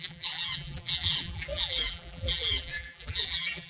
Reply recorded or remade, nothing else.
remade